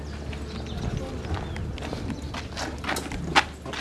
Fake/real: real